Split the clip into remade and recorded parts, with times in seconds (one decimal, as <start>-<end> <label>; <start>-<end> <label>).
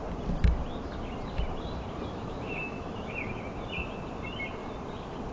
0.0-2.1 recorded; 2.1-3.1 remade; 3.1-5.3 recorded